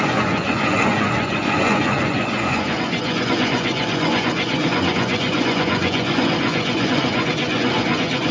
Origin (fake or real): fake